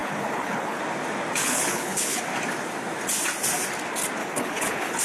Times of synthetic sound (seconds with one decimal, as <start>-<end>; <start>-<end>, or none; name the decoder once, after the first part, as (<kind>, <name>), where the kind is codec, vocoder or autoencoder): 0.0-0.8 (codec, HILCodec); 1.4-2.2; 4.2-5.0